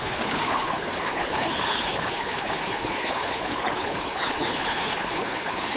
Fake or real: fake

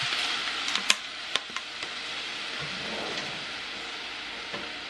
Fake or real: real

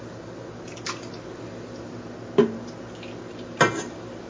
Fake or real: real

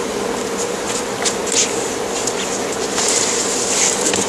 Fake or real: real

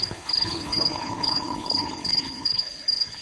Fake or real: fake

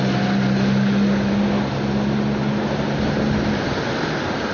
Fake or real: real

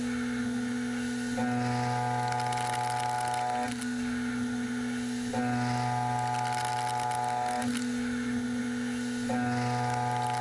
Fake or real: real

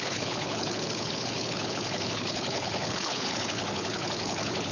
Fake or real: fake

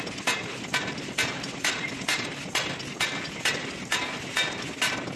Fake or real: real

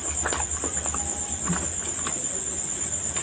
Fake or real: real